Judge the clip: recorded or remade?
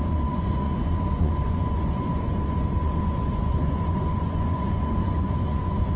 remade